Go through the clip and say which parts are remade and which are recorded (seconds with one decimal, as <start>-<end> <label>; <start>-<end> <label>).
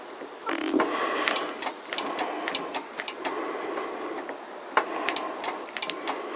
0.0-6.4 recorded